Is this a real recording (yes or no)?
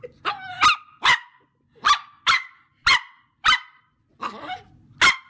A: yes